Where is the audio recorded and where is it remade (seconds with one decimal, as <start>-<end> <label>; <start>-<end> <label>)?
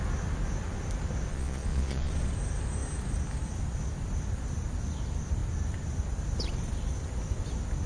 0.0-1.3 recorded; 1.3-2.1 remade; 2.1-7.9 recorded